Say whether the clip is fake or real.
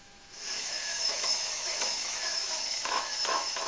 fake